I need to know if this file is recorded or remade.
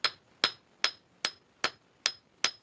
recorded